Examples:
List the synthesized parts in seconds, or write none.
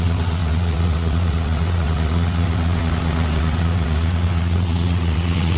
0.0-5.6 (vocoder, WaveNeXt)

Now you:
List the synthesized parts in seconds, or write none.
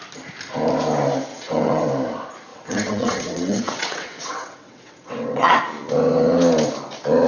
1.3-1.9 (vocoder, WaveNeXt); 2.5-5.6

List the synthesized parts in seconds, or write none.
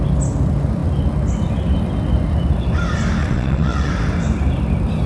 3.2-3.9 (vocoder, WaveNeXt)